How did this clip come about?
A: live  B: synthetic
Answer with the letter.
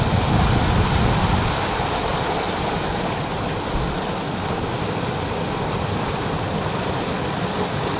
A